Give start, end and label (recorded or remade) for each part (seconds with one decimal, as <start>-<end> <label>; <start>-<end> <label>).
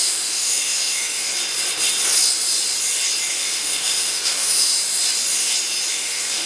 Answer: 0.0-1.3 remade; 1.3-3.3 recorded; 3.3-4.8 remade; 4.8-5.9 recorded; 5.9-6.5 remade